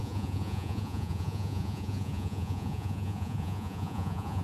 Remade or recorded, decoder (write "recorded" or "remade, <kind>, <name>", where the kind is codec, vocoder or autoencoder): remade, vocoder, Vocos